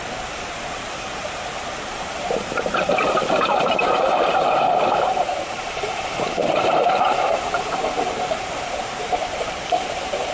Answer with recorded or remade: remade